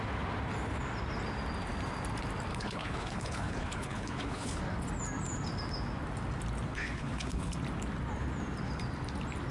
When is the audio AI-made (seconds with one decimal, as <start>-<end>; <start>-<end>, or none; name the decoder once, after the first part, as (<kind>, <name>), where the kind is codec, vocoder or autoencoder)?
2.5-4.6 (codec, HILCodec); 6.7-7.5